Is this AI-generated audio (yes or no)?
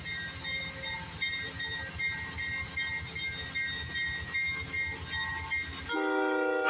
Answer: no